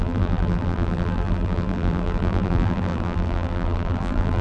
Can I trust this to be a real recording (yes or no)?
no